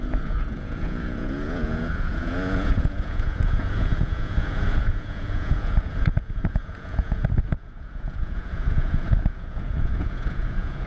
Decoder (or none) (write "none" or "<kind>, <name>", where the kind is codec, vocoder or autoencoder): vocoder, Vocos